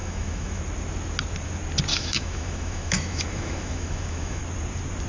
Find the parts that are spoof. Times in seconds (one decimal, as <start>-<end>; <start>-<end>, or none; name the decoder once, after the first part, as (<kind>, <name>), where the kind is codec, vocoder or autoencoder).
0.0-0.6 (autoencoder, DAC-VAE); 1.9-4.4